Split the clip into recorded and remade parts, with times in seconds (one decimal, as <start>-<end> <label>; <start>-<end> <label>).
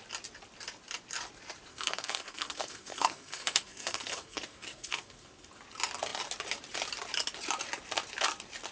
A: 0.0-1.7 recorded; 1.7-5.5 remade; 5.5-8.7 recorded